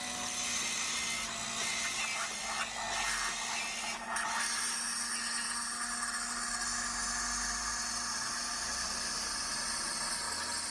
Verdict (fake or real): real